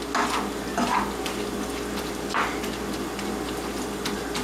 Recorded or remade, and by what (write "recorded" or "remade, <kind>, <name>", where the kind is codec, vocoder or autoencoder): recorded